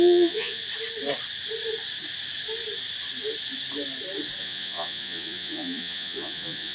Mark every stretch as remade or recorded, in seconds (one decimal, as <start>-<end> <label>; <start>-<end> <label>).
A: 0.0-0.6 remade; 0.6-4.4 recorded; 4.4-6.7 remade